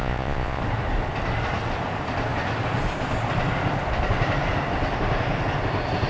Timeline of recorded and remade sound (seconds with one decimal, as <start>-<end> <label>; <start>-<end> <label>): 0.0-0.6 remade; 0.6-6.1 recorded